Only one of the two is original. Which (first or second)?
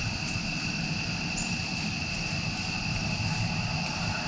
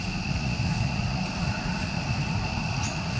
first